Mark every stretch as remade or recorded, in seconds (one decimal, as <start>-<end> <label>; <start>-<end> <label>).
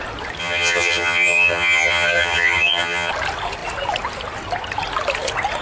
0.0-0.4 recorded; 0.4-3.1 remade; 3.1-5.6 recorded